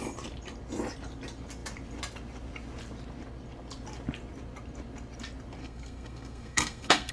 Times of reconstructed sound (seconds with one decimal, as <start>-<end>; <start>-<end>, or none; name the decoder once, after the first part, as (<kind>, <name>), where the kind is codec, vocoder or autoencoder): 5.6-7.1 (codec, SNAC)

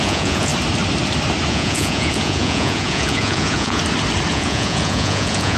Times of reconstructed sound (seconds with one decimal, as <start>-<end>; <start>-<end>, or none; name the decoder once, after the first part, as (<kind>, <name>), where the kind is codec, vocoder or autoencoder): 0.0-0.5 (vocoder, Vocos); 1.5-3.8; 4.3-5.6

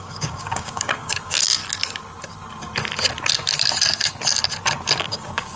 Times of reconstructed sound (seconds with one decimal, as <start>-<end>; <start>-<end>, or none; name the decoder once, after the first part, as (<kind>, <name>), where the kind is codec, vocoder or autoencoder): 0.0-1.6 (codec, DAC); 5.0-5.6

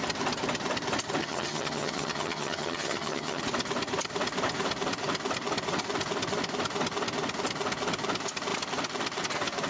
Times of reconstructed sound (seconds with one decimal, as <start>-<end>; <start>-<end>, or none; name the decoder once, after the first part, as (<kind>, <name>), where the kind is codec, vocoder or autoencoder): 1.2-3.4 (vocoder, HiFi-GAN)

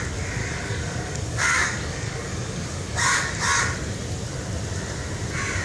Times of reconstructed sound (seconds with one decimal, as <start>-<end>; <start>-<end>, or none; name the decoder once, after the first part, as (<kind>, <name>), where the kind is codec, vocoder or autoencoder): 0.4-3.3 (codec, DAC)

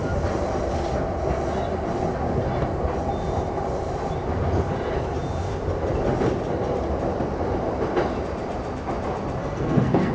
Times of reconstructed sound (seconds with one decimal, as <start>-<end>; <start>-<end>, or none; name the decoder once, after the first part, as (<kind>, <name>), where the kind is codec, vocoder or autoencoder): 9.4-10.1 (codec, SNAC)